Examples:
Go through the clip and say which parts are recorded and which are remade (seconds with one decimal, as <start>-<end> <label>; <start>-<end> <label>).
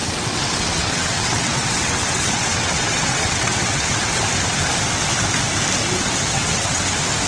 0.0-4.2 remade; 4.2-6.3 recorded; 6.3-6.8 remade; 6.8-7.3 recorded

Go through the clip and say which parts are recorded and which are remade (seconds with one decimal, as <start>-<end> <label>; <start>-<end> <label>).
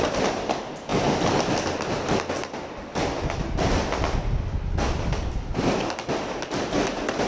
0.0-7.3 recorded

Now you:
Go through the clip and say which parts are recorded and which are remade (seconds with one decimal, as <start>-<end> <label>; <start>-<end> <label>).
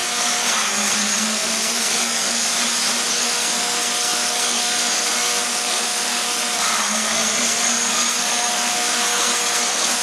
0.0-2.5 remade; 2.5-3.1 recorded; 3.1-10.0 remade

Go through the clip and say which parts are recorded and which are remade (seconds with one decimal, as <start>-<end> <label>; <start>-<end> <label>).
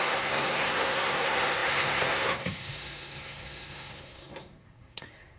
0.0-5.4 remade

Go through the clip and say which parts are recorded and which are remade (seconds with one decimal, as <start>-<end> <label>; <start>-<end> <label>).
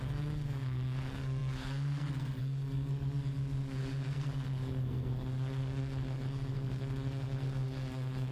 0.0-8.3 remade